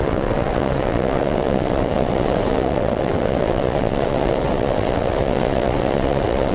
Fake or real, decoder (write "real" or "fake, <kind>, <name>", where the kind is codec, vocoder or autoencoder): fake, vocoder, WaveNeXt